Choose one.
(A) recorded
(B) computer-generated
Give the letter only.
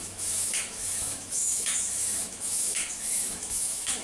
B